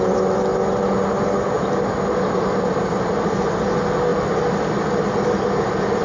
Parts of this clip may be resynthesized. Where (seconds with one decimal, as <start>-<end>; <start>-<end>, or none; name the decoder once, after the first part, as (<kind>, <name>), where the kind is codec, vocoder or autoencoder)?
none